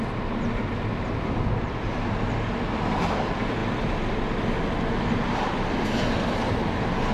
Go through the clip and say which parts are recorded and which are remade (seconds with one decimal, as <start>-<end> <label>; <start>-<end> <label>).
0.0-7.1 recorded